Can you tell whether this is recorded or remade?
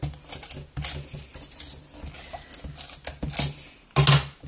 recorded